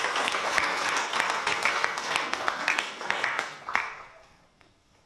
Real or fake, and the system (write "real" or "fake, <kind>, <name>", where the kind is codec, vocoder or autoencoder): fake, codec, SNAC